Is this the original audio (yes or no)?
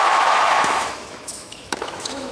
no